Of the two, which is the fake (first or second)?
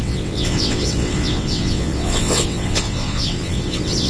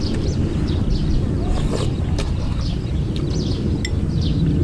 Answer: first